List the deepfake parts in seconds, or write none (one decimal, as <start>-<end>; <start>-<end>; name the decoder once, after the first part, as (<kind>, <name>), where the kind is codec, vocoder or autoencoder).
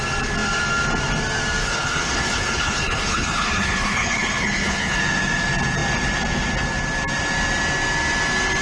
1.6-5.0 (codec, HILCodec)